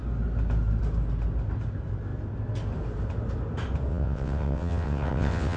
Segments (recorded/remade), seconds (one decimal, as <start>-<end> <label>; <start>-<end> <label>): 0.0-3.9 recorded; 3.9-5.6 remade